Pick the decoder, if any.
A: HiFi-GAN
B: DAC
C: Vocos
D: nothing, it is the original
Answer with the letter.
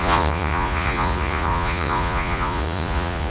C